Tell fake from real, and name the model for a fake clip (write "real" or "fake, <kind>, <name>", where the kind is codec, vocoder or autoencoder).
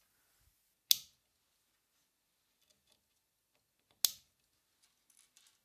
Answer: real